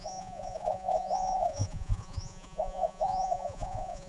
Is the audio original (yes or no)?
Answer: no